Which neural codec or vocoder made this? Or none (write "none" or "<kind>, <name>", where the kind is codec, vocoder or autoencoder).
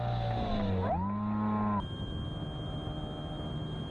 none